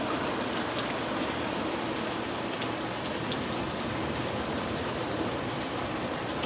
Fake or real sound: real